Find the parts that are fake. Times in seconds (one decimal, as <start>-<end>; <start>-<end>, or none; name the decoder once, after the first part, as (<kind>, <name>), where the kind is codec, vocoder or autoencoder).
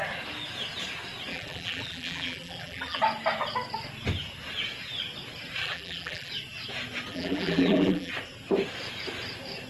1.3-3.0 (vocoder, BigVGAN v2); 5.6-6.3; 7.1-8.1